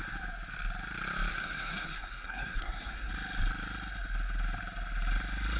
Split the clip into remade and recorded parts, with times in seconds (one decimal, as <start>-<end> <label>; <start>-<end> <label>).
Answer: 0.0-1.3 recorded; 1.3-3.1 remade; 3.1-5.6 recorded